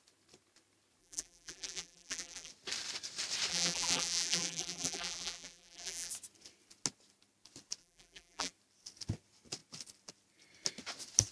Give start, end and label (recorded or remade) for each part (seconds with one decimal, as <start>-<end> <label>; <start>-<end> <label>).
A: 0.0-1.0 recorded; 1.0-2.5 remade; 2.5-3.5 recorded; 3.5-6.1 remade; 6.1-7.8 recorded; 7.8-8.5 remade; 8.5-11.3 recorded